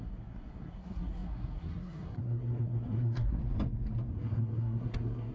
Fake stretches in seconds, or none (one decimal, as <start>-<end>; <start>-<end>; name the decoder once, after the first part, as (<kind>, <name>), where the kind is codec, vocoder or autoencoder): 0.0-3.4 (codec, SNAC); 4.1-5.3